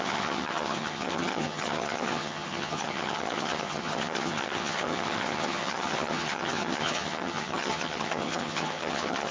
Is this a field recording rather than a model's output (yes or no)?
no